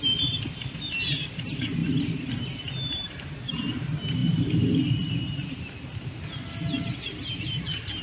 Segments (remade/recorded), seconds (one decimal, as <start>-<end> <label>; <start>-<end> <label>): 0.0-8.0 recorded